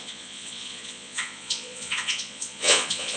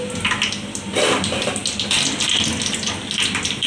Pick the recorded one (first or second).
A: second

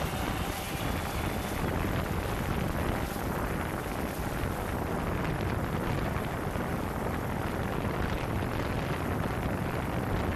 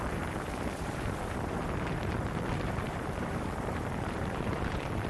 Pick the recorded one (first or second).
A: first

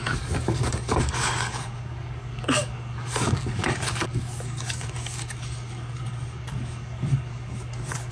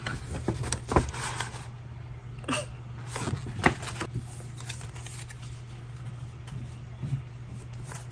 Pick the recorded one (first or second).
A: second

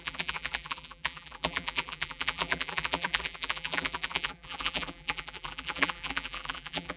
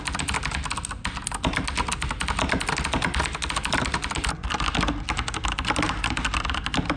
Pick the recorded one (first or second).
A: second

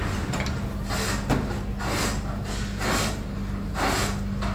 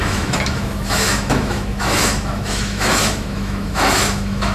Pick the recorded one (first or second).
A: first